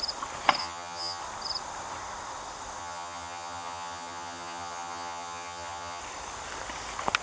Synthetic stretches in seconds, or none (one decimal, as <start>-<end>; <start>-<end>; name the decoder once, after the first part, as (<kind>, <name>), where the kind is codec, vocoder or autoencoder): 0.6-1.2 (vocoder, HiFi-GAN); 2.8-6.0